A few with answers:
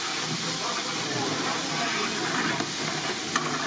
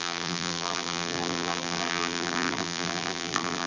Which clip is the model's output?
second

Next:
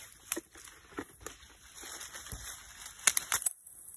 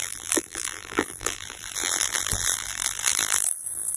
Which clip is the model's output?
second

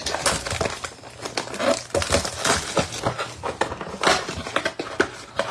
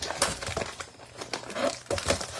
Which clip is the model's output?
second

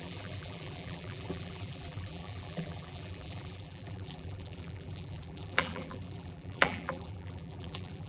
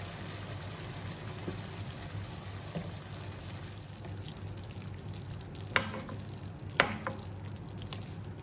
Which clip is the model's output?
first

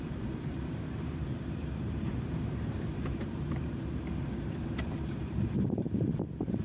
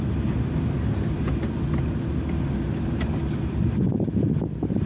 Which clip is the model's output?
first